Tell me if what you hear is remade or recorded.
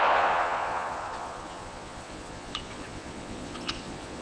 remade